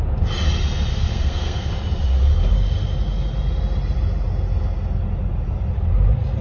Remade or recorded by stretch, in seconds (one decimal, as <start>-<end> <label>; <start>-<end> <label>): 0.0-0.9 recorded; 0.9-1.7 remade; 1.7-6.4 recorded